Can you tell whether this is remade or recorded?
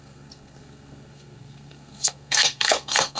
remade